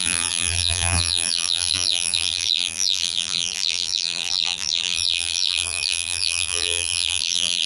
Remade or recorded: remade